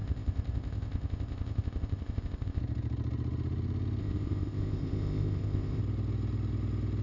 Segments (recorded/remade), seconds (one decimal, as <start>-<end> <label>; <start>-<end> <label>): 0.0-2.6 remade; 2.6-4.0 recorded; 4.0-5.8 remade; 5.8-7.0 recorded